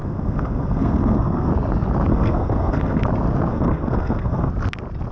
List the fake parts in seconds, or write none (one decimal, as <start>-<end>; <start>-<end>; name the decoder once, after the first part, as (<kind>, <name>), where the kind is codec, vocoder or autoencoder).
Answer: 0.0-1.5 (codec, SNAC); 2.1-3.0; 3.5-4.5